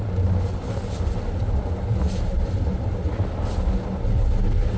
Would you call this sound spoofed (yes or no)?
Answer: no